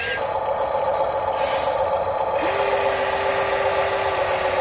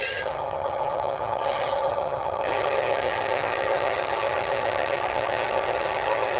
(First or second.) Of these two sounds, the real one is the first